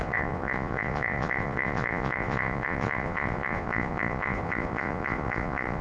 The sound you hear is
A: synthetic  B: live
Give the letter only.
A